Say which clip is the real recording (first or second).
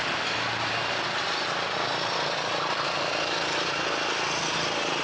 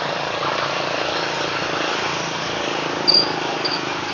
first